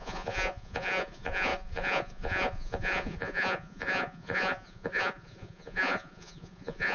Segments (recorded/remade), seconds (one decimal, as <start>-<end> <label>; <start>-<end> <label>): 0.0-6.9 remade